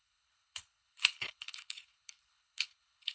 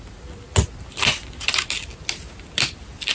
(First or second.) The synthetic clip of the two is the first